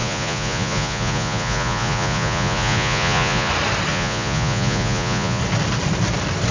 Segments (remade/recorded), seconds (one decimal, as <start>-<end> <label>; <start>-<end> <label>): 0.0-3.5 remade; 3.5-3.9 recorded; 3.9-5.4 remade; 5.4-6.5 recorded